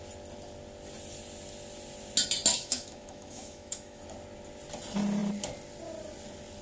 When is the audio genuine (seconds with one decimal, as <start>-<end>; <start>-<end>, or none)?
0.0-2.5; 4.0-6.6